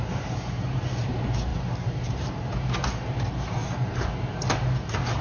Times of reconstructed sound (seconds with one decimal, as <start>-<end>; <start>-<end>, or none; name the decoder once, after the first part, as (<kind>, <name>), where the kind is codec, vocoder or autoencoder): 1.5-2.4 (vocoder, BigVGAN v2); 3.6-4.3